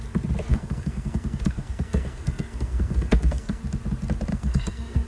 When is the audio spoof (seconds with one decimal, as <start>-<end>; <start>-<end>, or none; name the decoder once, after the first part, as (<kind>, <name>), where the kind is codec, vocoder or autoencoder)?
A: 0.5-3.6 (codec, SNAC); 4.3-5.1